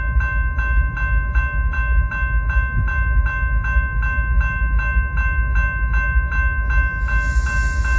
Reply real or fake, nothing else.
real